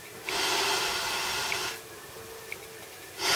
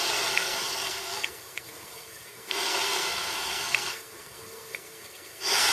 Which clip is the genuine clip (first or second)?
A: first